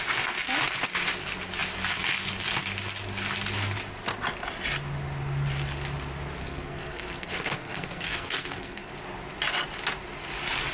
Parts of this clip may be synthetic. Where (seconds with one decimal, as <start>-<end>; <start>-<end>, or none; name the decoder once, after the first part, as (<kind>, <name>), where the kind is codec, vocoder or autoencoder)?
6.4-8.9 (codec, SNAC)